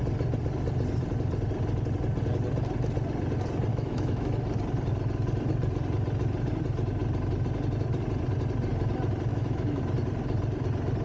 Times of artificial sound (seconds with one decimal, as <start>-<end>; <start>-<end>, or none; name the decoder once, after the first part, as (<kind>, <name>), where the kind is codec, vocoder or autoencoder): 3.7-4.3 (autoencoder, DAC-VAE); 9.3-9.8